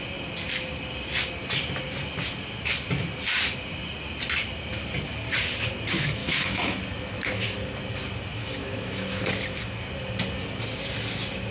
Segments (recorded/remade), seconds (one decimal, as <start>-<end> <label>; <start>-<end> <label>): 0.0-6.2 recorded; 6.2-6.8 remade; 6.8-8.3 recorded; 8.3-9.2 remade; 9.2-11.5 recorded